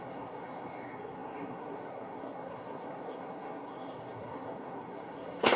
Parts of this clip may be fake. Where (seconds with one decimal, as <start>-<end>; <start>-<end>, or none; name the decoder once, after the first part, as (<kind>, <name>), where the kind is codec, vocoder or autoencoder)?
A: 0.0-5.6 (codec, SNAC)